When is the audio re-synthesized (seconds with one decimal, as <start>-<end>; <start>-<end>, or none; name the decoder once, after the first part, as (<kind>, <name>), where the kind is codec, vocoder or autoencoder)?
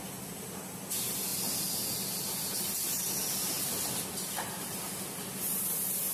none